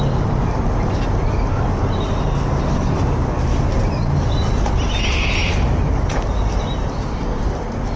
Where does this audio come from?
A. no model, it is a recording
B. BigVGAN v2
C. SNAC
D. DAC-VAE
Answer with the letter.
A